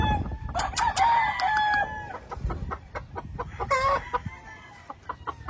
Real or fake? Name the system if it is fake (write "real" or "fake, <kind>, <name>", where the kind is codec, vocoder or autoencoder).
real